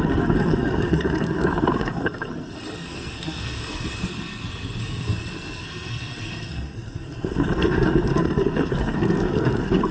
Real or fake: fake